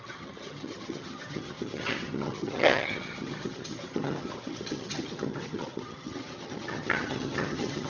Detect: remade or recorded remade